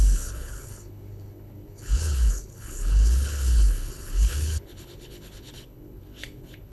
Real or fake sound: fake